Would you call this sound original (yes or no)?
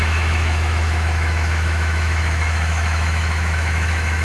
no